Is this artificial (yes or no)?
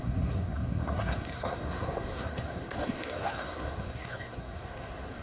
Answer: yes